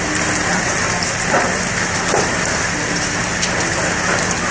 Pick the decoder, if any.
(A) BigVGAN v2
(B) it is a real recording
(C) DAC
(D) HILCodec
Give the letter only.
B